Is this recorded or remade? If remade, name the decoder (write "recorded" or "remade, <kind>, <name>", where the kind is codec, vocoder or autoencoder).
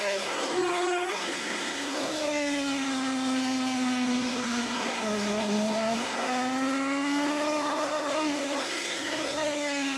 remade, codec, SNAC